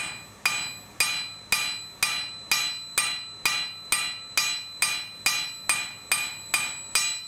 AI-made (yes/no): no